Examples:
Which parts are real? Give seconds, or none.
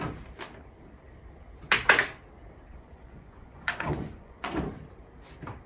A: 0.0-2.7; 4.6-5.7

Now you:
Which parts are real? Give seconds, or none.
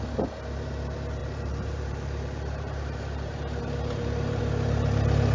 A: 0.0-1.2; 4.4-5.3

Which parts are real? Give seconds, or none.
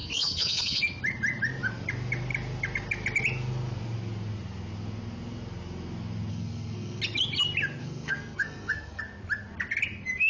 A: 0.8-6.3; 7.0-7.8; 9.0-10.3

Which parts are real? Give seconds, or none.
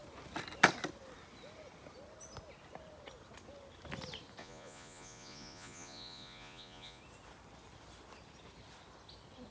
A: 0.0-4.4; 7.0-9.5